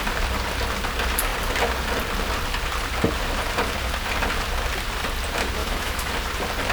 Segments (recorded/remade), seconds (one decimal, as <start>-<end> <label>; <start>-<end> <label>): 0.0-5.6 recorded; 5.6-6.1 remade; 6.1-6.7 recorded